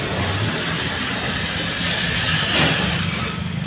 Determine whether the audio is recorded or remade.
recorded